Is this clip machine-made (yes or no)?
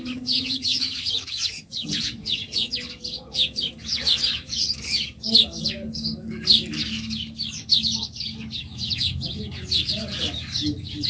yes